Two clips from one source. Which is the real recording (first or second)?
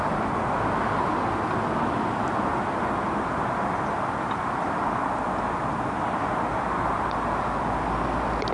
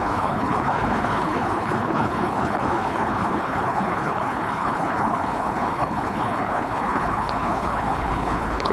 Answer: first